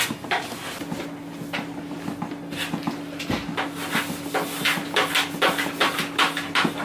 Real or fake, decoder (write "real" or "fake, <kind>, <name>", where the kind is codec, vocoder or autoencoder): real